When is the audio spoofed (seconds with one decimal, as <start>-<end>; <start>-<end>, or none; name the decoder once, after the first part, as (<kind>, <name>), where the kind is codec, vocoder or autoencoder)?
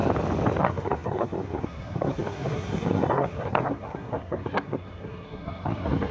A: 0.6-6.1 (codec, SNAC)